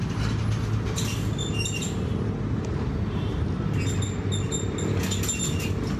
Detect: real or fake real